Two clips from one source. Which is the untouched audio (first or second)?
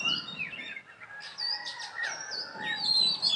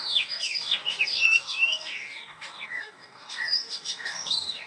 first